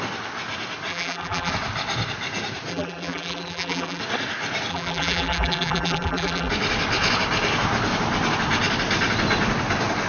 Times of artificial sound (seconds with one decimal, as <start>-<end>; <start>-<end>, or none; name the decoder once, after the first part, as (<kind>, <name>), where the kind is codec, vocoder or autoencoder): 0.9-1.5 (vocoder, BigVGAN v2); 2.7-4.0; 4.7-6.5